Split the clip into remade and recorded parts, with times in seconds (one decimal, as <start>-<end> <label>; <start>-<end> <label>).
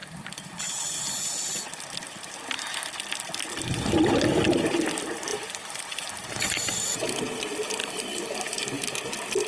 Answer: 0.0-0.6 remade; 0.6-5.3 recorded; 5.3-7.2 remade; 7.2-7.8 recorded; 7.8-9.0 remade; 9.0-9.5 recorded